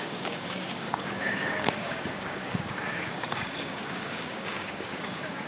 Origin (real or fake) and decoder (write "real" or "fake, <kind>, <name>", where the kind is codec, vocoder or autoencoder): fake, codec, DAC